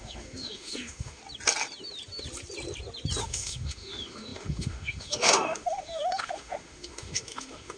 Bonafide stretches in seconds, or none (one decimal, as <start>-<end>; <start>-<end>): 1.2-3.2